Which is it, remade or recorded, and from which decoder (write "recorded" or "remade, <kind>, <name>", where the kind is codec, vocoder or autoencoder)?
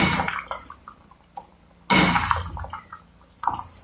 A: recorded